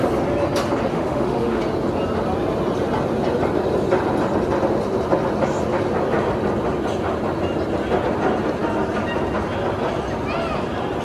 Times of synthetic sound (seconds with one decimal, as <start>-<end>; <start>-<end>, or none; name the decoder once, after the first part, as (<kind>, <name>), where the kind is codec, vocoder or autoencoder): 0.9-1.6 (autoencoder, DAC-VAE)